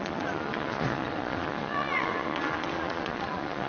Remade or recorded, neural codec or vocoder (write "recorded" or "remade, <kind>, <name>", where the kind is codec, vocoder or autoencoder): remade, vocoder, Vocos